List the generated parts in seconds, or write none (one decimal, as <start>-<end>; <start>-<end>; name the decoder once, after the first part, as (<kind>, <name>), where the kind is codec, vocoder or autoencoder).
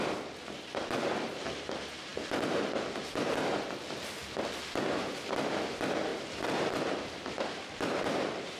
0.0-4.2 (vocoder, BigVGAN v2); 5.1-8.6